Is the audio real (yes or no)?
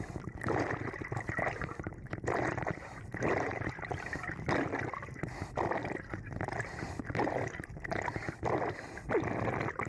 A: yes